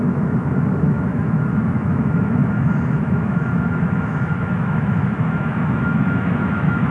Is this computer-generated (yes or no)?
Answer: yes